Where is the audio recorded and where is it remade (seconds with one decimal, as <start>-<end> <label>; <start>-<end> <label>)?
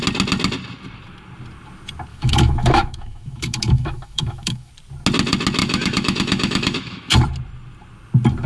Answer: 0.0-2.1 recorded; 2.1-4.7 remade; 4.7-5.6 recorded; 5.6-7.1 remade; 7.1-8.5 recorded